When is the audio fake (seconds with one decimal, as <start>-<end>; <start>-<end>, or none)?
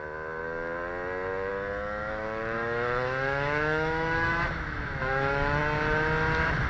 2.0-5.6